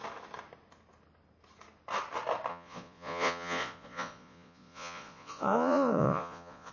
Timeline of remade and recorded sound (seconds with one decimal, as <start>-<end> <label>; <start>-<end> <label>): 0.0-2.5 recorded; 2.5-6.7 remade